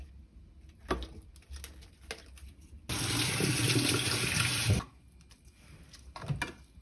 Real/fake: real